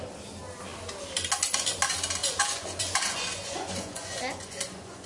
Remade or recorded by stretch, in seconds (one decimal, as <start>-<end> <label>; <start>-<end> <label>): 0.0-2.2 recorded; 2.2-5.1 remade

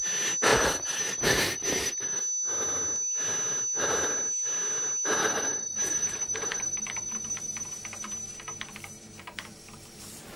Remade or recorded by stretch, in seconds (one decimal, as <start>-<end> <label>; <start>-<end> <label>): 0.0-0.5 recorded; 0.5-2.2 remade; 2.2-5.2 recorded; 5.2-10.4 remade

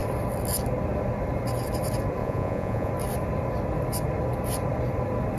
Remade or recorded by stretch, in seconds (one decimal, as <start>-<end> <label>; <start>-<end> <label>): 0.0-2.2 recorded; 2.2-2.9 remade; 2.9-5.4 recorded

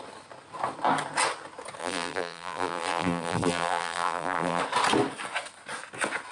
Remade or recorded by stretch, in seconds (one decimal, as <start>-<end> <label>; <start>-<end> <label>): 0.0-1.8 recorded; 1.8-4.6 remade; 4.6-6.3 recorded

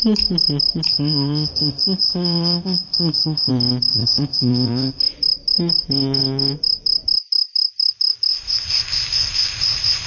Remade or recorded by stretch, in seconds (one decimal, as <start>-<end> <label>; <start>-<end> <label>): 0.0-0.9 recorded; 0.9-3.5 remade; 3.5-3.9 recorded; 3.9-5.0 remade; 5.0-8.3 recorded; 8.3-10.1 remade

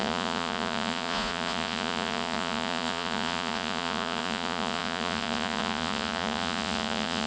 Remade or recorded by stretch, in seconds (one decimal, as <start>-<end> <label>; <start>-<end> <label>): 0.0-7.3 remade

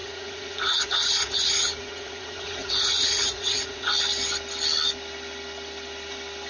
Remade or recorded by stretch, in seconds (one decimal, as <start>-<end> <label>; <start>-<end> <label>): 0.0-3.9 remade; 3.9-6.5 recorded

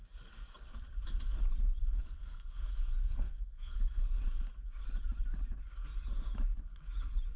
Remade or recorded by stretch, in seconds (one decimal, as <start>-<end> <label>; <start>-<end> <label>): 0.0-1.8 recorded; 1.8-4.2 remade; 4.2-7.4 recorded